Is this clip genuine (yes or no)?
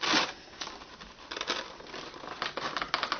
yes